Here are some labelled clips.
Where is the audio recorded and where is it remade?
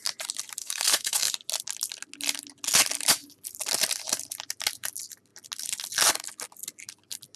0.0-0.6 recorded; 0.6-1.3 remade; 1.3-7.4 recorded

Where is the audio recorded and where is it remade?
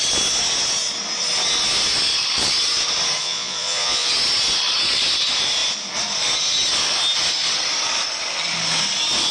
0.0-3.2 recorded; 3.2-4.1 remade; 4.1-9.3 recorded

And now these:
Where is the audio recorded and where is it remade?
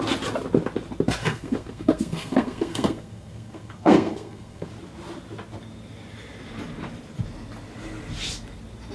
0.0-1.2 recorded; 1.2-4.7 remade; 4.7-8.9 recorded